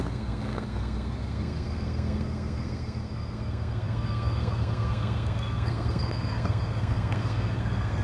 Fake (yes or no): yes